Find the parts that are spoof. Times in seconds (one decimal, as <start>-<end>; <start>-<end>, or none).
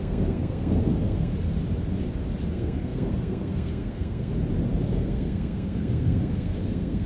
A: 0.0-1.3; 2.5-4.3; 4.9-7.1